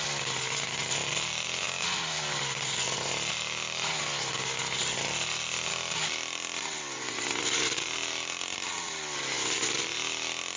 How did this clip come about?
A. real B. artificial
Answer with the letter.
A